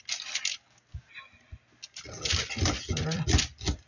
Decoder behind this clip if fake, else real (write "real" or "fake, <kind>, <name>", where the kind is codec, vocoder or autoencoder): real